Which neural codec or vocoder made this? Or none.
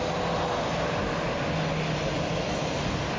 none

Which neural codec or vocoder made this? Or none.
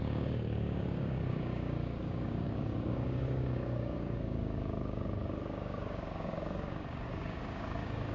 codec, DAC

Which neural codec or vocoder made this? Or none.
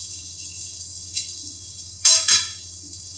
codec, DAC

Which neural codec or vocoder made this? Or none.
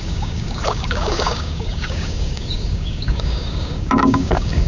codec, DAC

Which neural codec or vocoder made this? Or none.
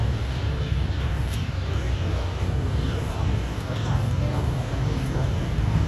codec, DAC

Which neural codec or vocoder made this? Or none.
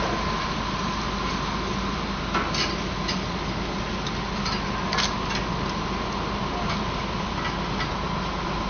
none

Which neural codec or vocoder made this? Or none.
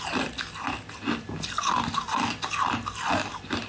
none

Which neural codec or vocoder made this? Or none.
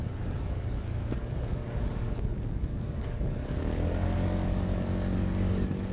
codec, DAC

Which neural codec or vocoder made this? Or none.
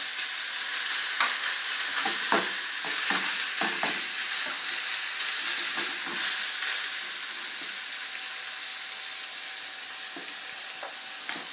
none